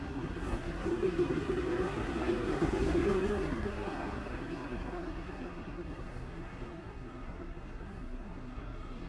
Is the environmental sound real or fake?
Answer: fake